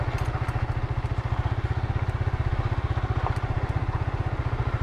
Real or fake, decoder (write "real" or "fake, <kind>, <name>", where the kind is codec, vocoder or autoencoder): real